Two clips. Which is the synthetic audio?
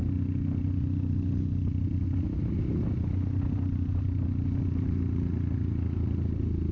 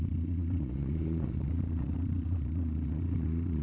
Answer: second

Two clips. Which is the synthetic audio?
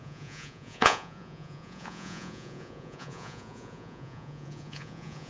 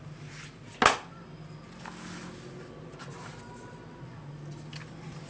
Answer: first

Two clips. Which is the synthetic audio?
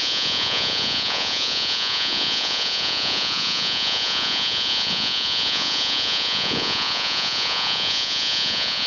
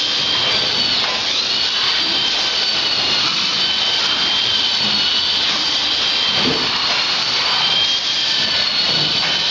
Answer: first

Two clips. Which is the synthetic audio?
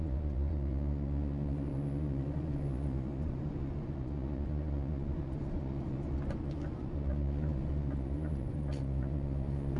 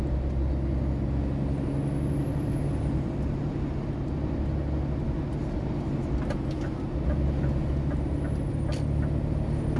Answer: first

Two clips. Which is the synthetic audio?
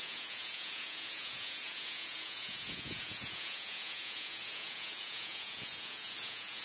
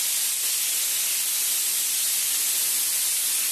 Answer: first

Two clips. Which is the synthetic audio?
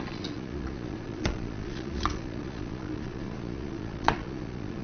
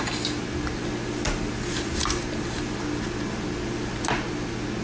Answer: first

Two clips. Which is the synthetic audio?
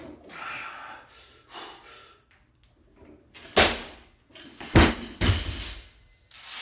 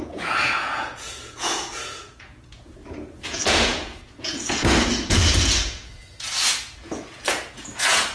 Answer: second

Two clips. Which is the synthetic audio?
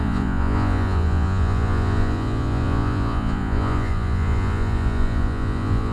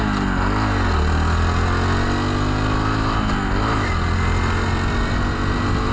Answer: first